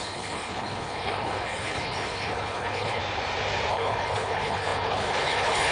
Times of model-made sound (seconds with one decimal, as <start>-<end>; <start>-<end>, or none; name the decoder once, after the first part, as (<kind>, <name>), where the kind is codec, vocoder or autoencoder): 0.0-3.0 (codec, HILCodec); 3.7-5.7